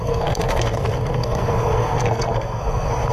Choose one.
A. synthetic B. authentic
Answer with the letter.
A